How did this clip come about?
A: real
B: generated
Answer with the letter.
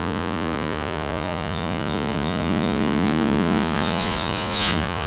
B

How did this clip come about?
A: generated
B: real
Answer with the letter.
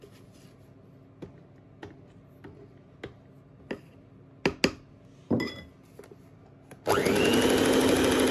B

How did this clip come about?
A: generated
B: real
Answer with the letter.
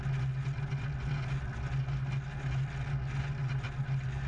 B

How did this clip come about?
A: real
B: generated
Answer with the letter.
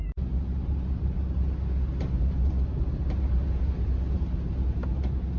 A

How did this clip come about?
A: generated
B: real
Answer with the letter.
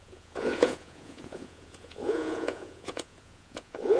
A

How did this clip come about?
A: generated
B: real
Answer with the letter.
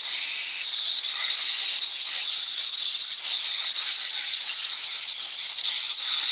B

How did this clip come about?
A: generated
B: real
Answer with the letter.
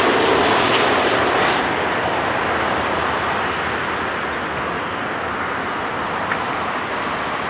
B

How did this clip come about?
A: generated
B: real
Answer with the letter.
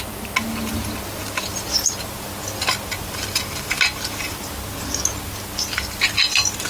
B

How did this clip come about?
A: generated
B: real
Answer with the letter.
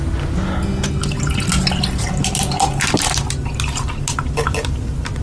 B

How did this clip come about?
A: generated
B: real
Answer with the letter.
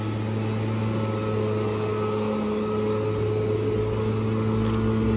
B